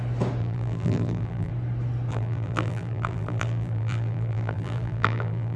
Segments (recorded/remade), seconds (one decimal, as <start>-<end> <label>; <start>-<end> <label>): 0.0-0.4 recorded; 0.4-1.5 remade; 1.5-2.1 recorded; 2.1-5.6 remade